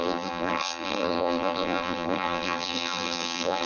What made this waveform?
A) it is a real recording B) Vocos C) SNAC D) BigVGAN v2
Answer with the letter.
D